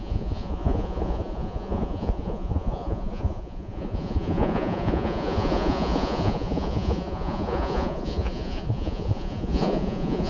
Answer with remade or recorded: remade